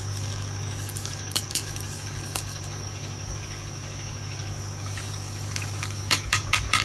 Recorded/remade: remade